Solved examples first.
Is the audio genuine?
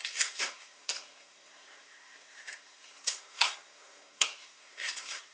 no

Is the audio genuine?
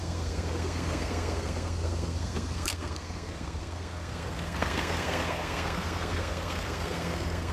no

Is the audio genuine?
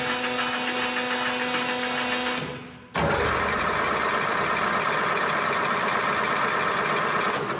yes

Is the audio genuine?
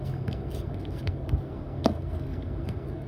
no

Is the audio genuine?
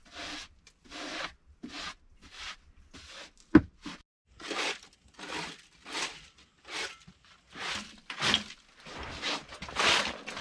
yes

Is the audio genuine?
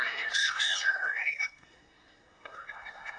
no